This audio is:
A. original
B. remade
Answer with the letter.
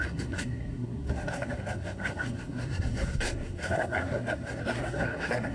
B